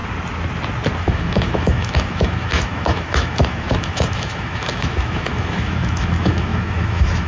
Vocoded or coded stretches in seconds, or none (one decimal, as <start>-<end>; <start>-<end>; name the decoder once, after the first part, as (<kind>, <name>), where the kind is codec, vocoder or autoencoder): 1.0-7.3 (autoencoder, DAC-VAE)